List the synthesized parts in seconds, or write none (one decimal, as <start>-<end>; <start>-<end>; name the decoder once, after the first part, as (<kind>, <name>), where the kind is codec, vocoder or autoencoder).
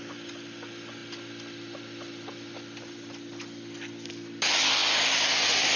none